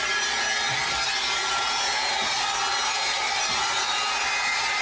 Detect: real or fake real